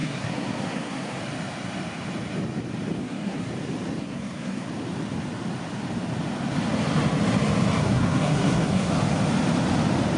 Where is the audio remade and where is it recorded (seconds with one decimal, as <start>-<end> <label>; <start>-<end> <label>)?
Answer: 0.0-1.2 remade; 1.2-3.0 recorded; 3.0-3.5 remade; 3.5-4.0 recorded; 4.0-4.7 remade; 4.7-7.8 recorded; 7.8-8.9 remade; 8.9-10.2 recorded